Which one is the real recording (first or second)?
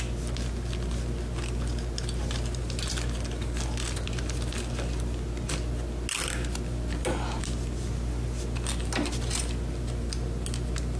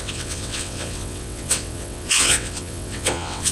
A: first